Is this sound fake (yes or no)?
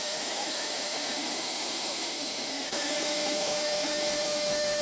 yes